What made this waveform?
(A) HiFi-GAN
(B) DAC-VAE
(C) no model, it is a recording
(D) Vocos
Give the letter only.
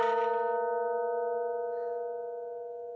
C